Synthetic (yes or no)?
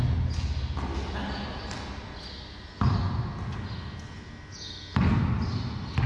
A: no